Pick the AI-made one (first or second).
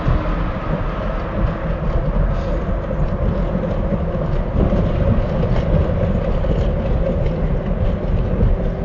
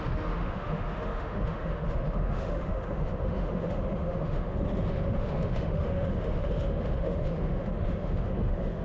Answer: second